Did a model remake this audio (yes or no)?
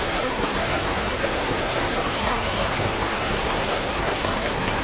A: yes